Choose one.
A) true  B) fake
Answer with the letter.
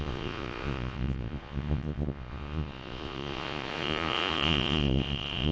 B